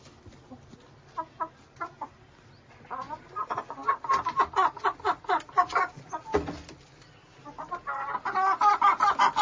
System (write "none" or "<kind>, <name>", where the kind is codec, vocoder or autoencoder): none